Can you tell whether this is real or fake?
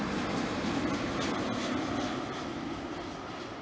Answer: real